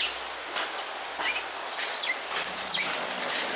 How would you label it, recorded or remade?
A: recorded